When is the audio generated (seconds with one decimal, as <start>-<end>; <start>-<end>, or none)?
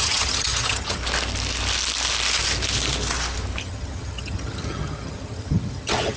0.0-1.0; 3.6-6.2